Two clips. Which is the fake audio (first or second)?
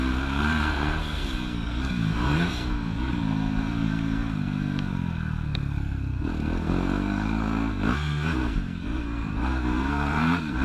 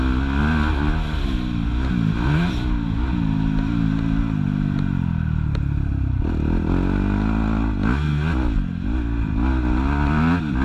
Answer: first